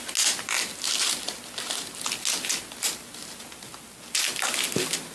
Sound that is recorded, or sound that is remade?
recorded